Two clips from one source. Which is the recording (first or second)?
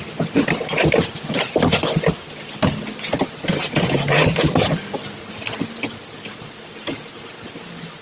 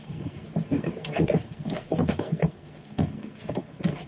first